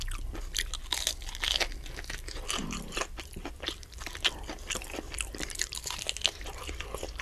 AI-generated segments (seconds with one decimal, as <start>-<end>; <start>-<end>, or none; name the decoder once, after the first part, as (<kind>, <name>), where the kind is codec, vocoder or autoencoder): none

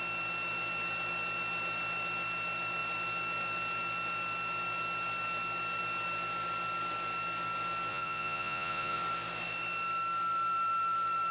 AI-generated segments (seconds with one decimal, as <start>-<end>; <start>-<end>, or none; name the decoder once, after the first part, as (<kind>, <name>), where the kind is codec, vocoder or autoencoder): 7.9-9.0 (vocoder, Vocos)

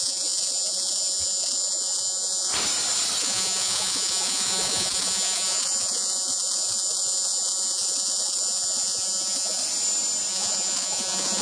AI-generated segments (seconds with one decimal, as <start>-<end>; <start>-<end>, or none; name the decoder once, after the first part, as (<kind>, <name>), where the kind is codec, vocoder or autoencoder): 0.0-2.5 (vocoder, Vocos); 3.2-9.6; 10.3-11.4

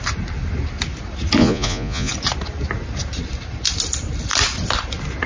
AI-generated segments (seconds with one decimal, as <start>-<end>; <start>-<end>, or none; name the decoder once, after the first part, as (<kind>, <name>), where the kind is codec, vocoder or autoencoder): 1.4-2.1 (vocoder, Vocos)

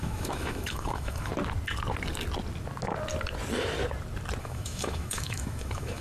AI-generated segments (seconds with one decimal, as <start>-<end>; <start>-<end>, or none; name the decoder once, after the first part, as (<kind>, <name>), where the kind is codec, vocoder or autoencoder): 0.0-1.3 (autoencoder, DAC-VAE); 4.4-6.0

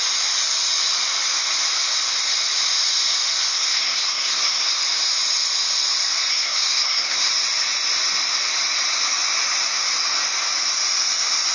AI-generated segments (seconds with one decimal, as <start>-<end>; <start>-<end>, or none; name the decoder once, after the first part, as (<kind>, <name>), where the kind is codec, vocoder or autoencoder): 3.5-4.8 (codec, SNAC); 6.3-7.3

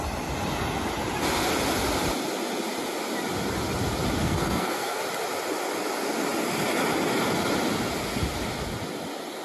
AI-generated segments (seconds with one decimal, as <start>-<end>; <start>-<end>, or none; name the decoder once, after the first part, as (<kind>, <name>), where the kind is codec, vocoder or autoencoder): 4.2-5.0 (codec, SNAC)